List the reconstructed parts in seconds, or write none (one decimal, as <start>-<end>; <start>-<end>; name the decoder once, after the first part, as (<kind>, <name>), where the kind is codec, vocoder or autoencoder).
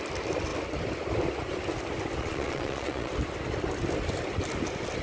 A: 2.2-3.1 (vocoder, Vocos)